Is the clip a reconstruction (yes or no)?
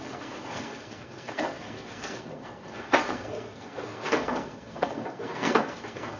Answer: yes